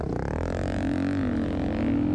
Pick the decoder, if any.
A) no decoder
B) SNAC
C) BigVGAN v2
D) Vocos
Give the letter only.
A